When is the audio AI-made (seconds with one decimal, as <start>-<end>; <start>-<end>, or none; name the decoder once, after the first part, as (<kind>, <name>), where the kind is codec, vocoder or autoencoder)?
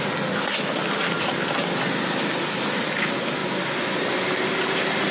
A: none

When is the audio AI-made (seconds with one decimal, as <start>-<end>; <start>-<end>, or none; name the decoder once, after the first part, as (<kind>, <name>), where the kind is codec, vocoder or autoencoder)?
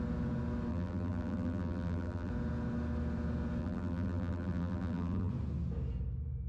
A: 0.7-2.3 (vocoder, BigVGAN v2); 3.6-5.3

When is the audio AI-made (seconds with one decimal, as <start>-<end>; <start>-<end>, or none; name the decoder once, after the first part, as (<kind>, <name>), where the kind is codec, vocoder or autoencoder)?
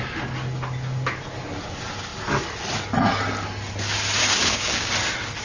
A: 4.2-4.9 (codec, DAC)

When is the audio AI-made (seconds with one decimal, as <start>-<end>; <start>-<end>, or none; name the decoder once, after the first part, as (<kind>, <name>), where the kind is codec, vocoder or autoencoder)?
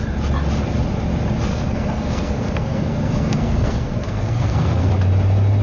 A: 1.5-4.9 (codec, SNAC)